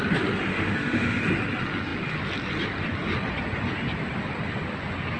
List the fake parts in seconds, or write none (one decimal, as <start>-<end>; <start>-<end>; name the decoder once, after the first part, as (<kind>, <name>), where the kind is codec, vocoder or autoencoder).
0.5-1.2 (autoencoder, DAC-VAE)

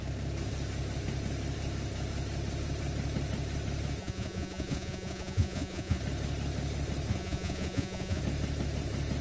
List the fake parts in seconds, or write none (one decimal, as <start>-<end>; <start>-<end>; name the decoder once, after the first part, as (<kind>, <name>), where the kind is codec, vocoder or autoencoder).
4.0-6.0 (vocoder, Vocos); 7.1-8.2